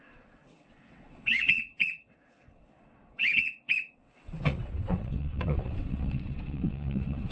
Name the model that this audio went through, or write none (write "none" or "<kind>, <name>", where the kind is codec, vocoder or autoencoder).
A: vocoder, WaveNeXt